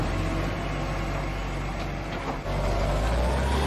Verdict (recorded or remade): recorded